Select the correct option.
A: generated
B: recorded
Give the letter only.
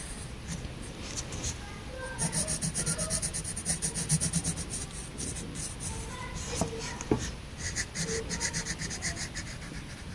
B